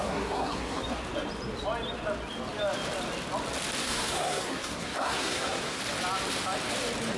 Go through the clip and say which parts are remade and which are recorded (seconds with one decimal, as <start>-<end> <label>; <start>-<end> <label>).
0.0-0.8 remade; 0.8-3.8 recorded; 3.8-5.8 remade; 5.8-7.2 recorded